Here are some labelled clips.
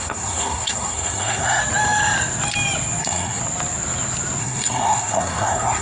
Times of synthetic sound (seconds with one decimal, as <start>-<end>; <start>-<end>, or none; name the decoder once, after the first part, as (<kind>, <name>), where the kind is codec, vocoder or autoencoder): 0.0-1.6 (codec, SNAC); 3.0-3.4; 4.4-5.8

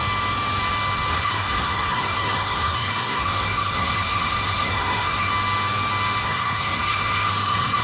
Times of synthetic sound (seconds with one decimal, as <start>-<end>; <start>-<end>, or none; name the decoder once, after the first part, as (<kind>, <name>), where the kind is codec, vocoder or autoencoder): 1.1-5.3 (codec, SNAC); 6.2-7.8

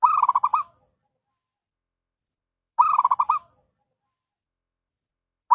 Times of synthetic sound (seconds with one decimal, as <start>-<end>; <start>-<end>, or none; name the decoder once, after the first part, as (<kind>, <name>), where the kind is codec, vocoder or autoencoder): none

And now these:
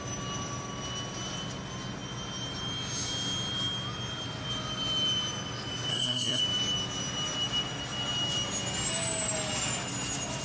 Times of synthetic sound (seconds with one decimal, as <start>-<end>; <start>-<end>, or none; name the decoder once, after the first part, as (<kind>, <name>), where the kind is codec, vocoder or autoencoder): 5.9-6.4 (codec, SNAC)